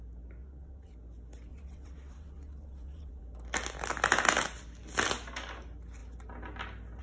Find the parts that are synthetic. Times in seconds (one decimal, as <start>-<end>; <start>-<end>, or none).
0.4-0.9; 1.5-3.2